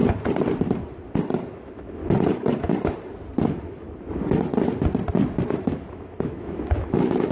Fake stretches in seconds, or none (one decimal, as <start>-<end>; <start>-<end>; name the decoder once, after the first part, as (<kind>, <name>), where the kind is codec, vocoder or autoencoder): 1.5-2.0 (autoencoder, DAC-VAE); 4.0-4.5; 5.5-7.3